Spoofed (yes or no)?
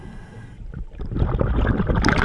no